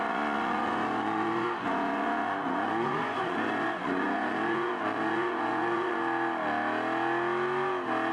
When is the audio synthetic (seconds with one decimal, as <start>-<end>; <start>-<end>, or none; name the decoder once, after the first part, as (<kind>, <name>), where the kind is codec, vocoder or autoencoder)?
0.0-6.0 (vocoder, Vocos)